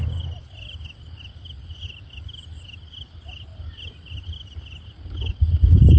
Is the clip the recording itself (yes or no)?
yes